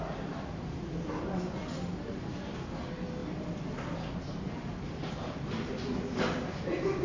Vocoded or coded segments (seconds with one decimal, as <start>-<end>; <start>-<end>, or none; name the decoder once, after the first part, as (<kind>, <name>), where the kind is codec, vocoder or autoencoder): none